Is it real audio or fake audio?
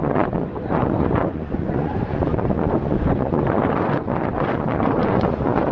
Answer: fake